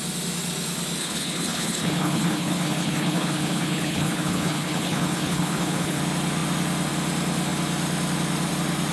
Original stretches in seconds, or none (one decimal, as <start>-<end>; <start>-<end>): 0.0-1.0; 6.0-8.9